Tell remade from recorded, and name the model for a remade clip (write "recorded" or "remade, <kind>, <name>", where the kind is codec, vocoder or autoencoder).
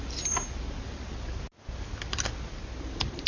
recorded